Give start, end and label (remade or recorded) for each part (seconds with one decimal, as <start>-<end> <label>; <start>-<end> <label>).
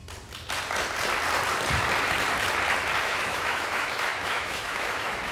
0.0-3.0 recorded; 3.0-5.3 remade